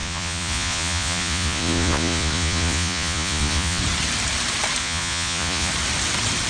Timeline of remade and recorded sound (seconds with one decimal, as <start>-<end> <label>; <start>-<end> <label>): 0.0-3.8 remade; 3.8-4.8 recorded; 4.8-5.7 remade; 5.7-6.5 recorded